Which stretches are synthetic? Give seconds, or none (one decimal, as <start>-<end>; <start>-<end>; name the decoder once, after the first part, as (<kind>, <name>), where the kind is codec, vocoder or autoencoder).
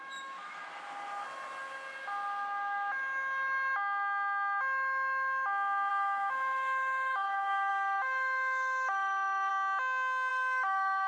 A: 0.0-0.6 (autoencoder, DAC-VAE); 5.9-9.5; 10.3-11.1